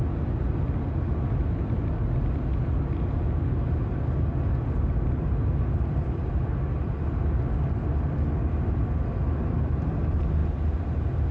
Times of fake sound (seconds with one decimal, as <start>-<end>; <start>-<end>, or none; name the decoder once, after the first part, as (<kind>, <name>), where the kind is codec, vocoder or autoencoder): none